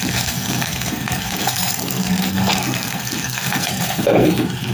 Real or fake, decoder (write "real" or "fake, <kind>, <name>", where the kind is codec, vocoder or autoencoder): fake, codec, SNAC